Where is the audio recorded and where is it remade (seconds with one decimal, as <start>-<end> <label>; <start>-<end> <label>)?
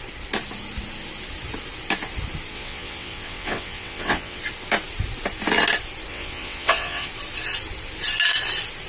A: 0.0-2.5 recorded; 2.5-4.4 remade; 4.4-6.1 recorded; 6.1-7.1 remade; 7.1-8.9 recorded